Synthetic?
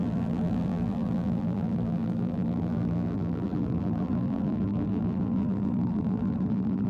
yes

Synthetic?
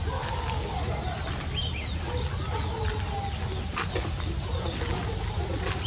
no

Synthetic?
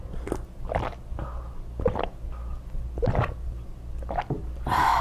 no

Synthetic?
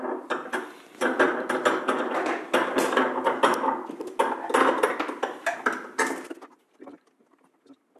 no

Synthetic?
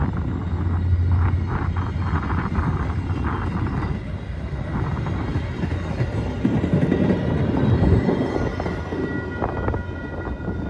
no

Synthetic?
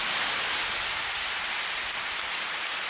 no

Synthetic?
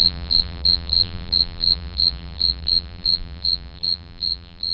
yes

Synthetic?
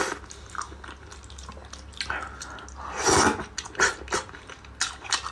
no